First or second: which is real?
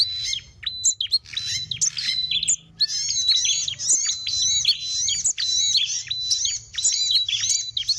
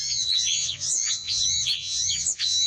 first